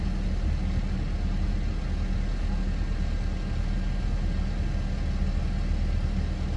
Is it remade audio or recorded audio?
recorded